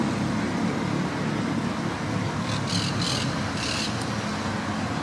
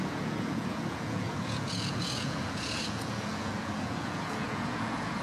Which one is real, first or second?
first